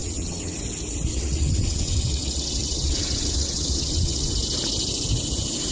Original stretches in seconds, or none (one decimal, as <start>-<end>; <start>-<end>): 0.6-1.1; 4.3-5.7